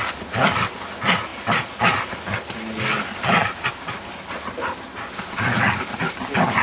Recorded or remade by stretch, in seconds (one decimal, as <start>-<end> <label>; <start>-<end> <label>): 0.0-6.6 recorded